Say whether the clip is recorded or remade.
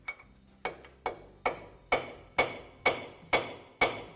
recorded